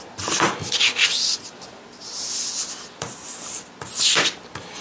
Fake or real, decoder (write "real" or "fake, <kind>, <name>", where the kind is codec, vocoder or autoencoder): real